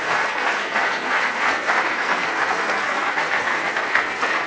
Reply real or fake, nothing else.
fake